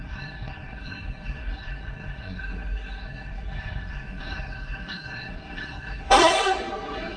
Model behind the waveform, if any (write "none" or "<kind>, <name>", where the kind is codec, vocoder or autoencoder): codec, SNAC